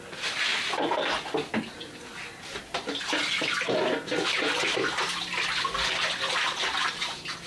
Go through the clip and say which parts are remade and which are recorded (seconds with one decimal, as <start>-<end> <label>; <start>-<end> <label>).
0.0-7.5 recorded